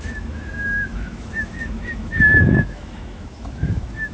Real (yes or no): no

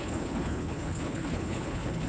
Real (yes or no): no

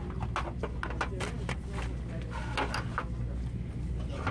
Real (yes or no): yes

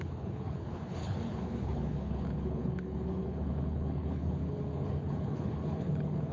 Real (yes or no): no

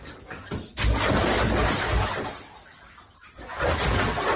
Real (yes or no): yes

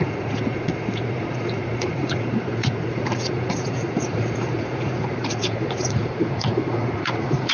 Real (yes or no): no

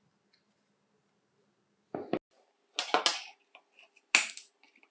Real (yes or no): yes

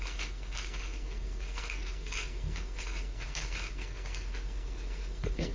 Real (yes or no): no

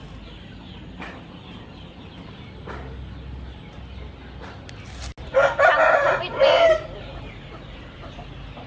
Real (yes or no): yes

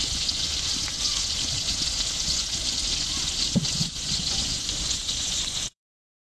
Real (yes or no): no